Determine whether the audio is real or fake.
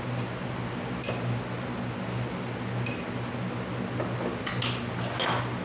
real